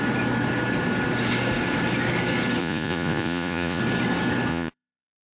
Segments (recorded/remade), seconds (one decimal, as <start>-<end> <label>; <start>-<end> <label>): 0.0-2.6 recorded; 2.6-3.8 remade; 3.8-4.5 recorded; 4.5-5.4 remade